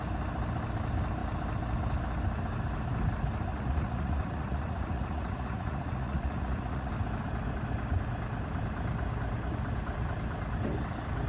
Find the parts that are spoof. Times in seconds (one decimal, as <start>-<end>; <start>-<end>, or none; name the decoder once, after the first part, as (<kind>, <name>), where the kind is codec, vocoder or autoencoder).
3.5-6.9 (vocoder, Vocos)